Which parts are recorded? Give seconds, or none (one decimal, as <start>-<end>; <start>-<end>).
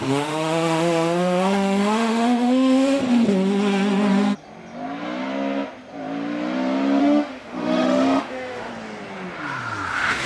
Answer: 3.0-7.0; 8.7-9.9